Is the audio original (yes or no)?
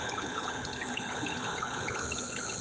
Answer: no